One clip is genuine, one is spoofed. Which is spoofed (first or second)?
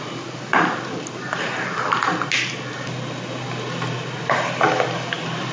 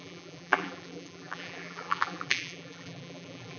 second